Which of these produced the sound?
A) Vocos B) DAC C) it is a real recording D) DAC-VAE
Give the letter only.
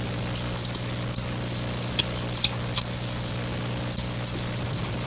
C